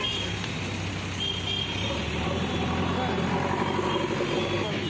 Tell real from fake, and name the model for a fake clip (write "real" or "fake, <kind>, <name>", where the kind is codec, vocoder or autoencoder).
real